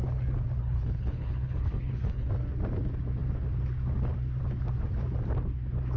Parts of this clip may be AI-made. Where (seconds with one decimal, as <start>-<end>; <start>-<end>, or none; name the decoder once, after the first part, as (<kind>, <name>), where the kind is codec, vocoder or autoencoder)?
0.6-2.3 (codec, HILCodec)